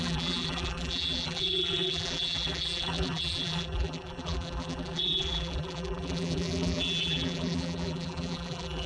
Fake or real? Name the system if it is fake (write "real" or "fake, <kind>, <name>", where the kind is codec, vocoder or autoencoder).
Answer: fake, vocoder, BigVGAN v2